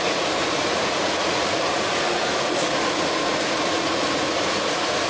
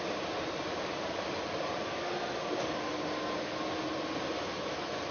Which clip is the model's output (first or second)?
first